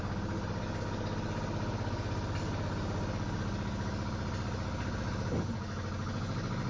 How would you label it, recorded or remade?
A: recorded